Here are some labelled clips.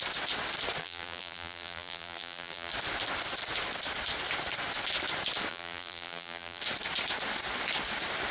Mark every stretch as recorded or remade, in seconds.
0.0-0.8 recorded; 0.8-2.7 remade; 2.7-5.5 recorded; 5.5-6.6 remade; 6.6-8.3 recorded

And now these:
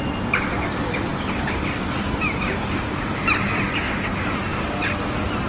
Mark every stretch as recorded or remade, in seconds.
0.0-1.1 recorded; 1.1-3.3 remade; 3.3-5.5 recorded

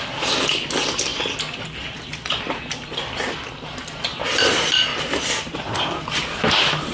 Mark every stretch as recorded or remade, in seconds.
0.0-4.9 recorded; 4.9-5.9 remade; 5.9-6.9 recorded